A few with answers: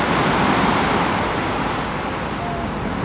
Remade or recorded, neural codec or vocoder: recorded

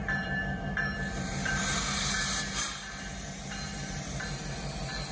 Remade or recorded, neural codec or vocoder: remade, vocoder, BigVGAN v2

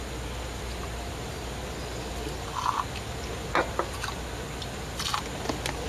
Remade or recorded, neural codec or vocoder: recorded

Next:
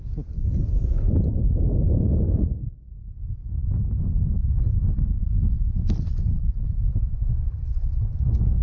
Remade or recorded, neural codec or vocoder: recorded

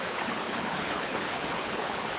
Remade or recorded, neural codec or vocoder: remade, codec, HILCodec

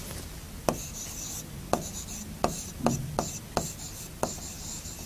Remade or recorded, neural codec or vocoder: recorded